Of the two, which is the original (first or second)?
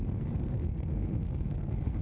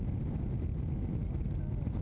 second